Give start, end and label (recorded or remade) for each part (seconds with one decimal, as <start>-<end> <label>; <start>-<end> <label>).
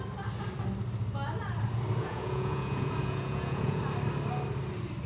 0.0-2.0 recorded; 2.0-3.8 remade; 3.8-5.1 recorded